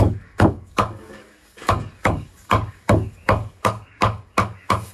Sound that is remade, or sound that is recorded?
remade